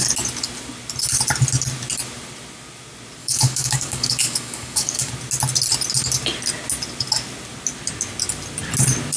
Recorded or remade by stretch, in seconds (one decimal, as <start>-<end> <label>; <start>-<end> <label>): 0.0-3.2 recorded; 3.2-5.1 remade; 5.1-9.2 recorded